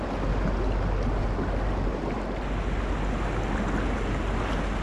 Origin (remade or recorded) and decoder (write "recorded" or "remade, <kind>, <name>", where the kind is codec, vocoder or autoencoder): recorded